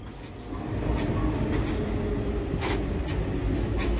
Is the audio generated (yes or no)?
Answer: no